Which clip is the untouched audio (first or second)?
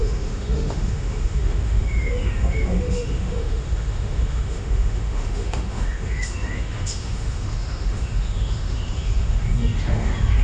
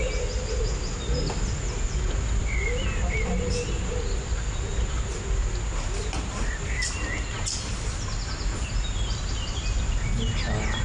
second